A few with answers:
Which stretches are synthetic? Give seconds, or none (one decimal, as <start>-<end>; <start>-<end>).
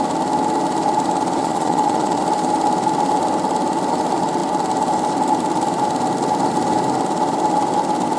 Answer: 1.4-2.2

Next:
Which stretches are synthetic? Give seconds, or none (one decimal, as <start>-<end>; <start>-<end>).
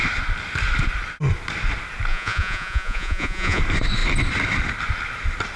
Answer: 2.1-3.6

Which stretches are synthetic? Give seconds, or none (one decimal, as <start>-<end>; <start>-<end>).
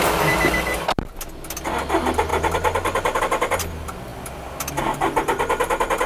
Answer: none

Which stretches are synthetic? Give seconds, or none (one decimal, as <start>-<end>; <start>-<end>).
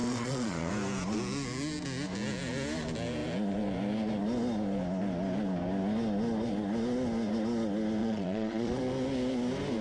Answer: 0.0-0.7; 8.0-8.8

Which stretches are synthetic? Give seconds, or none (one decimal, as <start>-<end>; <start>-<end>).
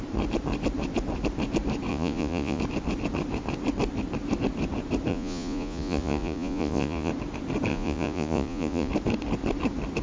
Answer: 1.9-2.6; 5.1-7.1; 7.7-8.9